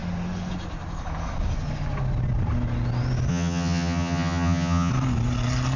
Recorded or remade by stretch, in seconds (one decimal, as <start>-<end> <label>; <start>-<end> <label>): 0.0-3.3 recorded; 3.3-4.9 remade; 4.9-5.8 recorded